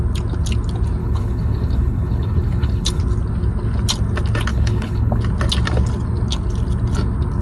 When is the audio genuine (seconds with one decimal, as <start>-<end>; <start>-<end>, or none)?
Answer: 0.0-1.0; 3.0-4.5; 5.2-7.4